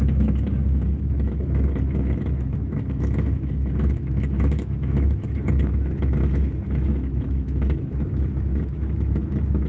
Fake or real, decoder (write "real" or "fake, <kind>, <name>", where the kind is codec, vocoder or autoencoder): fake, autoencoder, DAC-VAE